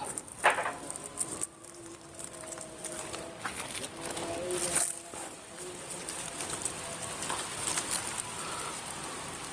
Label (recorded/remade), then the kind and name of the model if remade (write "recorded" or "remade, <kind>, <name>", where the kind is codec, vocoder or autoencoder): recorded